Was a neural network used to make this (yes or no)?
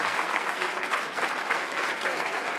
yes